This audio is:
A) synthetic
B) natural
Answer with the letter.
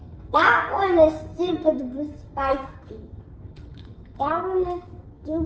A